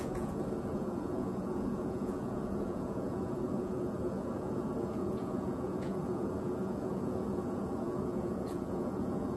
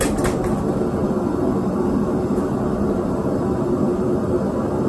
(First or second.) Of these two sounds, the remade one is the first